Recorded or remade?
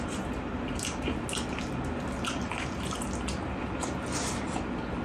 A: recorded